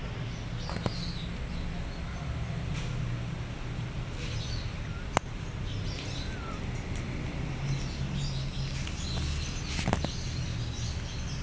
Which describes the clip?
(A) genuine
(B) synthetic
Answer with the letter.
A